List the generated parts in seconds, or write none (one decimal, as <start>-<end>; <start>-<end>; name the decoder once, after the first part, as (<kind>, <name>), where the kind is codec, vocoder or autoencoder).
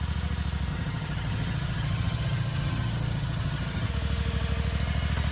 0.7-3.9 (vocoder, HiFi-GAN)